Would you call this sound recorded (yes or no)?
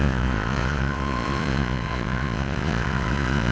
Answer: no